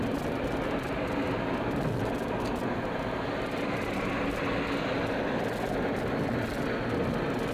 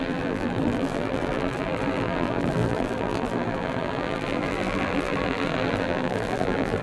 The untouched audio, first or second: first